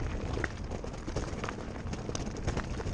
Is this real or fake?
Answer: real